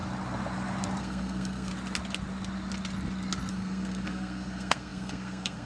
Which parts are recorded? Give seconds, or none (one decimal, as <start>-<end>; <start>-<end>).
0.0-1.0; 1.7-3.5